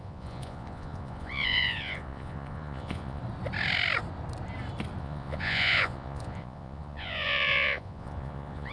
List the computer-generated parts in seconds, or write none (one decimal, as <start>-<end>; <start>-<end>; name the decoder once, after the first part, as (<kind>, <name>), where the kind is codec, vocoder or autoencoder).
0.0-3.2 (vocoder, Vocos); 5.0-8.7